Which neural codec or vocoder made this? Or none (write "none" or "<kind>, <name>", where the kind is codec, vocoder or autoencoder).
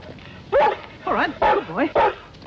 none